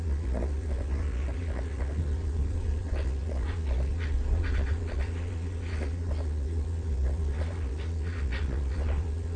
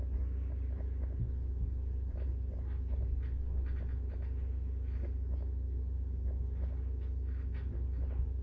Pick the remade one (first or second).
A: first